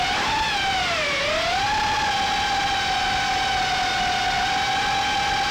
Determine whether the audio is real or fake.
real